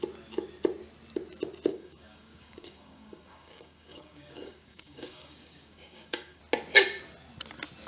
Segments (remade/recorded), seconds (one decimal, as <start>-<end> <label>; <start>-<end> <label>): 0.0-1.7 recorded; 1.7-6.4 remade; 6.4-7.9 recorded

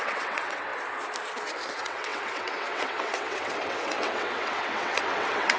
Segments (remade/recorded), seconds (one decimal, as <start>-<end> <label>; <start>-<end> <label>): 0.0-0.7 remade; 0.7-1.7 recorded; 1.7-5.6 remade